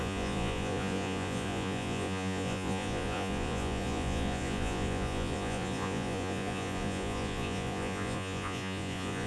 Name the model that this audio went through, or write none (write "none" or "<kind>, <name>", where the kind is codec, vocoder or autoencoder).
vocoder, Vocos